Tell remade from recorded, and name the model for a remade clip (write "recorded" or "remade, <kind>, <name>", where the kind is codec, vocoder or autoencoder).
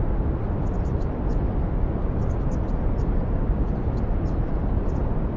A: recorded